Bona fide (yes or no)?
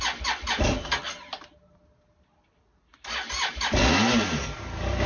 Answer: yes